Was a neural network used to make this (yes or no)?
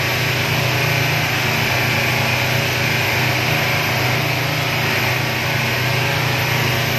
no